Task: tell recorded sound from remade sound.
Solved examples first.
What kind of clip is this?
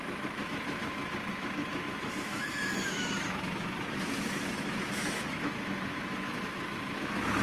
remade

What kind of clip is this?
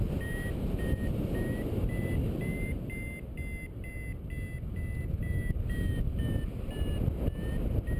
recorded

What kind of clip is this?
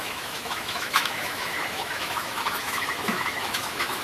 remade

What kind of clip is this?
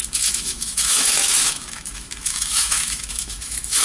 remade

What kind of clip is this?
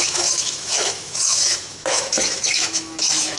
remade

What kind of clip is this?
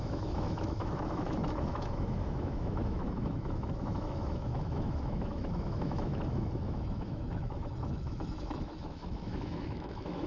remade